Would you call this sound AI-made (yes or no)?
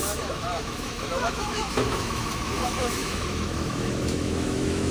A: yes